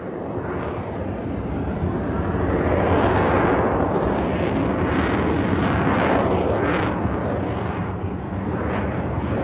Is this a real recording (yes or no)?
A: yes